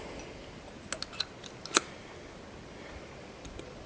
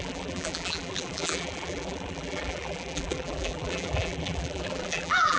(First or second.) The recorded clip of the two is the first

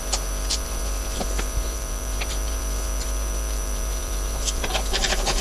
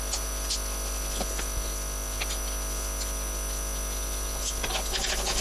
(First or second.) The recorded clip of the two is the second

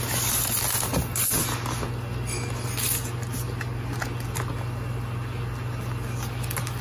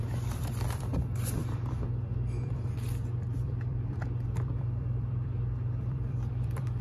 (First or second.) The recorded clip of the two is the first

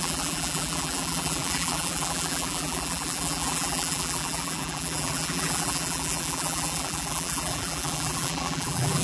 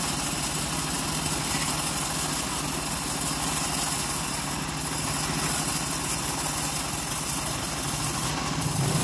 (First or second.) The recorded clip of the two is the second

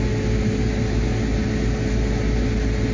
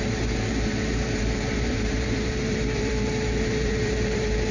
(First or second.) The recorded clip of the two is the first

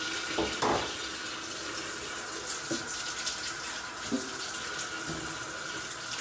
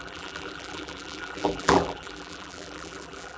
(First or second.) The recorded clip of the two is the first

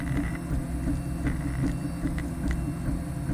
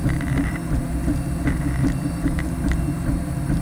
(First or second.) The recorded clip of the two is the first